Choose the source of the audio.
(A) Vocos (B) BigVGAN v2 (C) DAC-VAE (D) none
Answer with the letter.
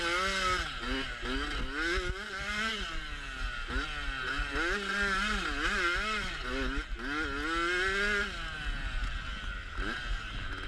D